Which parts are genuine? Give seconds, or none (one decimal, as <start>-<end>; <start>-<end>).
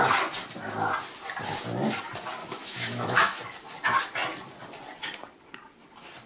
0.0-2.4; 3.4-6.3